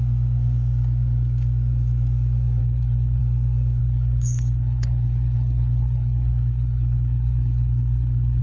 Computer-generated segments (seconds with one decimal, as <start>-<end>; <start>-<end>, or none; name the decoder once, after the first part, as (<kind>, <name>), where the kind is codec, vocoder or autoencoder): 2.6-3.2 (codec, HILCodec); 3.8-8.4